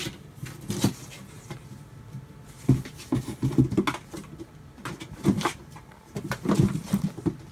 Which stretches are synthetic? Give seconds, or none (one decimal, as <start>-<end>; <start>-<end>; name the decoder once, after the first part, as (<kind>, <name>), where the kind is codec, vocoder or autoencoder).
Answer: 4.8-5.9 (vocoder, BigVGAN v2)